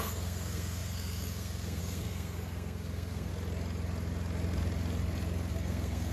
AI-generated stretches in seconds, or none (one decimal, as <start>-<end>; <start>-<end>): 0.0-3.3; 5.5-6.1